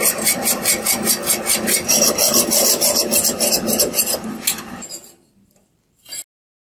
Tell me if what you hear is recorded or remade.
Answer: recorded